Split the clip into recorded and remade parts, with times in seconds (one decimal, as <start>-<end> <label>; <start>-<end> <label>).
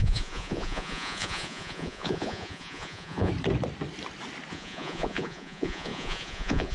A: 0.0-3.3 remade; 3.3-4.5 recorded; 4.5-6.7 remade